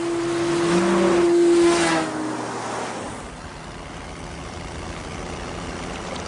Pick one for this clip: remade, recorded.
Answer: recorded